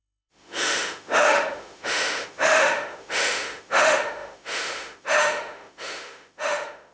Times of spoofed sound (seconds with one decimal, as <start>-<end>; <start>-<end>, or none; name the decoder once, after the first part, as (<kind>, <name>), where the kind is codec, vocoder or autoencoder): 0.0-6.9 (autoencoder, DAC-VAE)